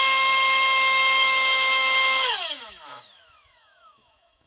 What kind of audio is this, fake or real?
fake